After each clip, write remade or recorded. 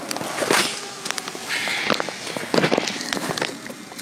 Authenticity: recorded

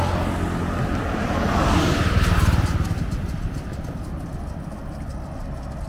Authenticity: recorded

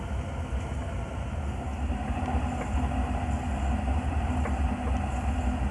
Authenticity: recorded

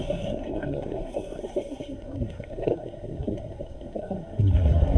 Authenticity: remade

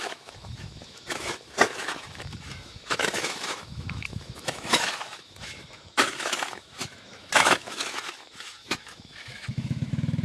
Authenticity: remade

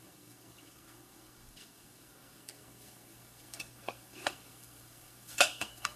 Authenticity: remade